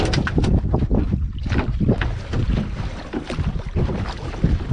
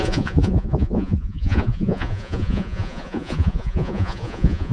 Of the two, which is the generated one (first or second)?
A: second